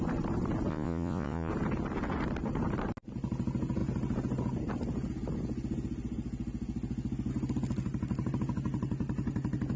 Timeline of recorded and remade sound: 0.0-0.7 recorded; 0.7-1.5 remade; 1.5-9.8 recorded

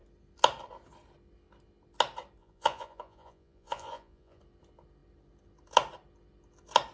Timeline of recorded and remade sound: 0.0-2.4 recorded; 2.4-4.4 remade; 4.4-6.9 recorded

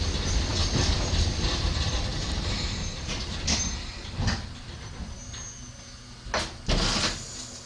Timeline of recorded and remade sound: 0.0-0.5 recorded; 0.5-3.5 remade; 3.5-7.7 recorded

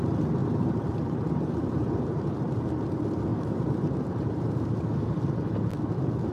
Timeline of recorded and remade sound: 0.0-0.4 recorded; 0.4-2.4 remade; 2.4-3.3 recorded; 3.3-4.9 remade; 4.9-6.3 recorded

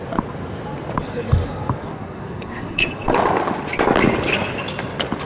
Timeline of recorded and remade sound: 0.0-1.9 recorded; 1.9-2.9 remade; 2.9-5.3 recorded

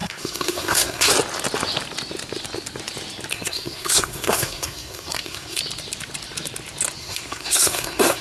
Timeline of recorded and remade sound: 0.0-1.1 remade; 1.1-3.3 recorded; 3.3-5.6 remade; 5.6-7.0 recorded; 7.0-8.2 remade